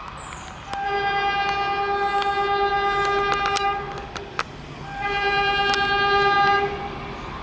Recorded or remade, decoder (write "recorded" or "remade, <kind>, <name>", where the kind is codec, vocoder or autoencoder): recorded